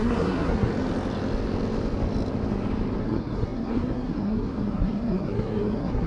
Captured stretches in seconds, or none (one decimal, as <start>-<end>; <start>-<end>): 0.7-3.0